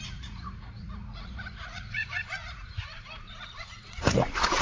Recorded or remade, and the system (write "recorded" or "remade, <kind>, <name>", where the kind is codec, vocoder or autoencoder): remade, vocoder, Vocos